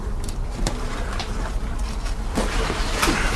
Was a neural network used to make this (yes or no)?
yes